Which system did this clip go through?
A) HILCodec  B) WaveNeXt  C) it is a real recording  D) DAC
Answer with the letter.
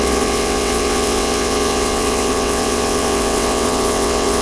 B